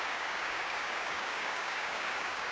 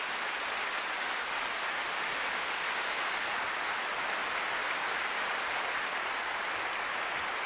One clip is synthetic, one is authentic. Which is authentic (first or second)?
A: second